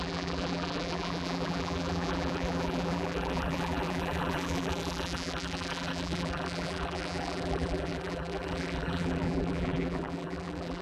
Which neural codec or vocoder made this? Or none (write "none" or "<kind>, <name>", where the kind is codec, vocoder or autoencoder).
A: vocoder, BigVGAN v2